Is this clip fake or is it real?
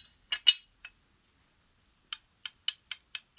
real